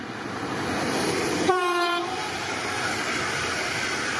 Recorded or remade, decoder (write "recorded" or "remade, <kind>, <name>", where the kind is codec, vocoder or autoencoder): remade, vocoder, BigVGAN v2